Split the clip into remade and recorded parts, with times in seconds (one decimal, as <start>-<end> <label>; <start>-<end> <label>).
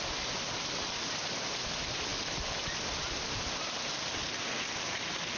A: 0.0-5.4 recorded